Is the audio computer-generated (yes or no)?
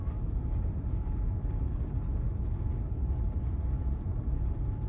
no